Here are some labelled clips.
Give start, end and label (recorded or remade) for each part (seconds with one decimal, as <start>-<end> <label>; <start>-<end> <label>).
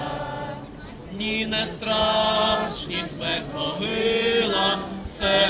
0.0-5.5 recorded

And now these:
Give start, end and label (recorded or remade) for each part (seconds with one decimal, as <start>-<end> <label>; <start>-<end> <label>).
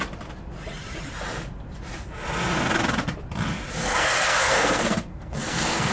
0.0-3.8 recorded; 3.8-5.9 remade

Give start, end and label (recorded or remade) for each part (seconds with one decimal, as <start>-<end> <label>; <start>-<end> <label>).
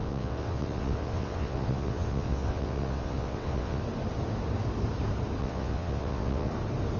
0.0-3.8 remade; 3.8-5.4 recorded; 5.4-6.5 remade; 6.5-7.0 recorded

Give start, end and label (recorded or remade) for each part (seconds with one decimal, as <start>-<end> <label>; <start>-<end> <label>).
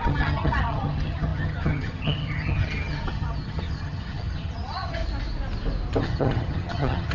0.0-5.0 remade; 5.0-6.0 recorded; 6.0-7.1 remade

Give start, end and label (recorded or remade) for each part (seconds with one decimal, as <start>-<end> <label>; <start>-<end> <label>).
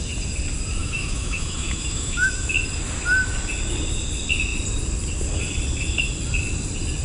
0.0-0.8 recorded; 0.8-2.5 remade; 2.5-7.0 recorded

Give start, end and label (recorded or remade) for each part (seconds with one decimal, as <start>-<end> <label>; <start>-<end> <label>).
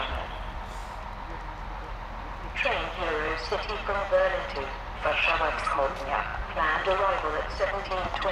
0.0-0.8 recorded; 0.8-1.8 remade; 1.8-4.0 recorded; 4.0-5.4 remade; 5.4-8.3 recorded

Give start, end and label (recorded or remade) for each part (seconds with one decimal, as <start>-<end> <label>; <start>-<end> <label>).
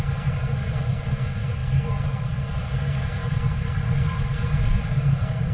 0.0-5.5 remade